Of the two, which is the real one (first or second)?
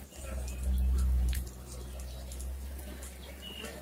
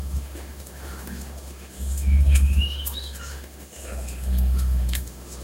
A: first